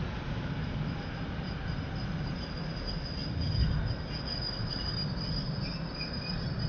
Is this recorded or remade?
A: recorded